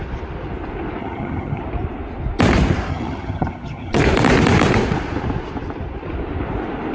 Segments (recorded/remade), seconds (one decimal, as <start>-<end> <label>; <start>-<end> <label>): 0.0-1.0 recorded; 1.0-1.6 remade; 1.6-2.9 recorded; 2.9-4.0 remade; 4.0-6.9 recorded